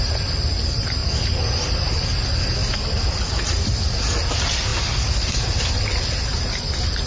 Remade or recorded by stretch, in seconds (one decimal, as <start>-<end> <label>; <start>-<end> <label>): 0.0-7.1 recorded